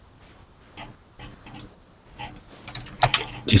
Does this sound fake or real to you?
real